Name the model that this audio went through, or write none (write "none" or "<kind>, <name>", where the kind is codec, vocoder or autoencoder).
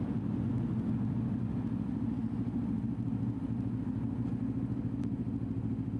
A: none